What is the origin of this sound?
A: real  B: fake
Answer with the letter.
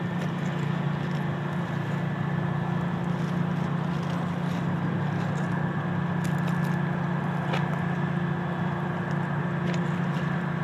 A